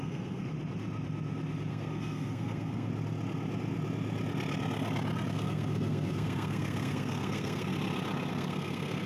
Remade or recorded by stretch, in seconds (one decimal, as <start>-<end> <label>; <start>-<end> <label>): 0.0-0.5 remade; 0.5-1.7 recorded; 1.7-2.9 remade; 2.9-5.3 recorded; 5.3-7.7 remade; 7.7-8.3 recorded; 8.3-9.1 remade